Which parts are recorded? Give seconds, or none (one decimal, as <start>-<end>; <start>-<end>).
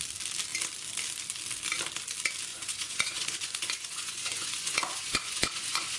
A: 0.0-2.5